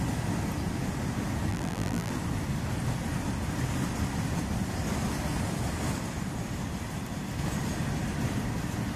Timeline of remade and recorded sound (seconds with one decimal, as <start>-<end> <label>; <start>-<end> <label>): 0.0-1.5 recorded; 1.5-2.1 remade; 2.1-9.0 recorded